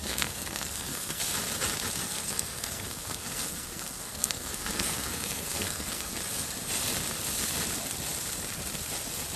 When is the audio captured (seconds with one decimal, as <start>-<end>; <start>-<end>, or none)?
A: 1.2-2.0; 6.1-9.4